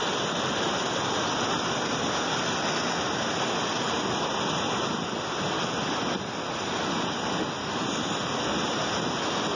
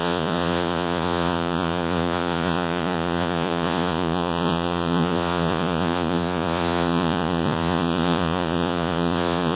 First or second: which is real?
first